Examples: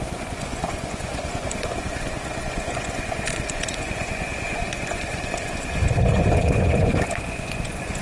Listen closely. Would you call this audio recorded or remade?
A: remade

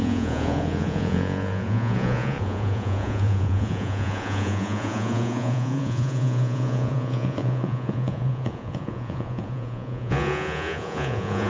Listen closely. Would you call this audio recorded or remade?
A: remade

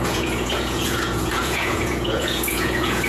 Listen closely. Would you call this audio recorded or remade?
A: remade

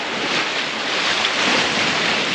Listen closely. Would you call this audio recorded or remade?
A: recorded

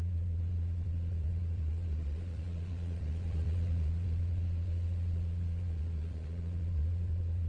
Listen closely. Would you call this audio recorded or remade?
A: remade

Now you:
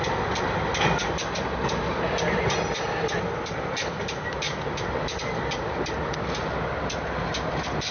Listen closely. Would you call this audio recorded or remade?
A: recorded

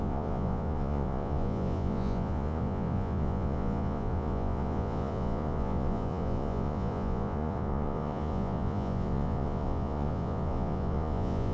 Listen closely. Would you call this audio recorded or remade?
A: remade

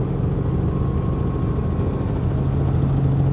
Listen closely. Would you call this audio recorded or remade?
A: recorded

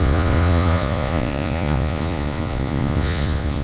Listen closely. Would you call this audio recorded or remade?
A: remade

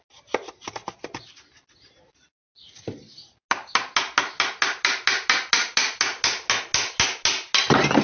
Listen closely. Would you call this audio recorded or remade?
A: recorded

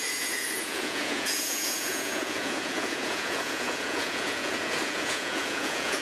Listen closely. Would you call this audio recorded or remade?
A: remade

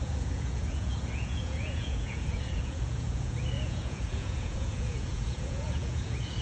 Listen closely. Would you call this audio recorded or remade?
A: remade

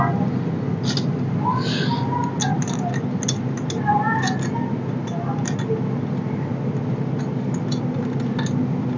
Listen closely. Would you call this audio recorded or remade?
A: recorded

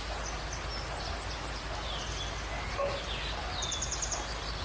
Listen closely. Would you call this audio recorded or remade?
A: recorded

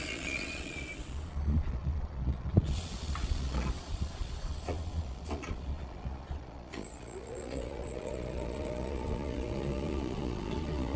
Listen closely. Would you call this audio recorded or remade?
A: remade